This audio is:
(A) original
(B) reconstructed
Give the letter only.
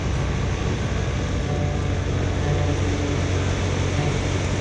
A